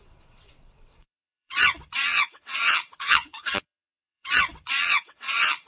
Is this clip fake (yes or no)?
yes